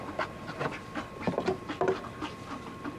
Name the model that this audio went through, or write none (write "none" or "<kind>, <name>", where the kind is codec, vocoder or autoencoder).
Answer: none